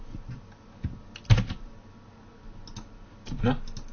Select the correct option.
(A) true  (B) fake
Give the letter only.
A